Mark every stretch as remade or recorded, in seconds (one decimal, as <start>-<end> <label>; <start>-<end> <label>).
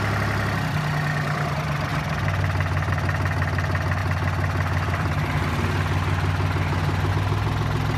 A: 0.0-8.0 recorded